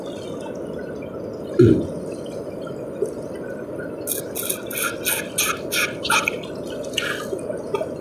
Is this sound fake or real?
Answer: real